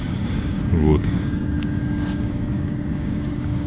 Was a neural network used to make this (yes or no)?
yes